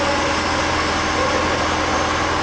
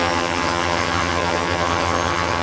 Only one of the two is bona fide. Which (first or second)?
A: first